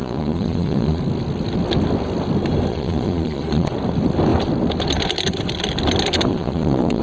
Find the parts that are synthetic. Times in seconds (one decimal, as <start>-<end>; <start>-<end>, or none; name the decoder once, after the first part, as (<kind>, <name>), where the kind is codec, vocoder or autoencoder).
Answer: 0.0-1.0 (vocoder, Vocos); 2.7-3.7; 6.3-7.0